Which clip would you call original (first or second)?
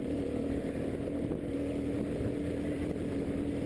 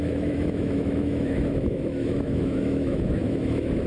first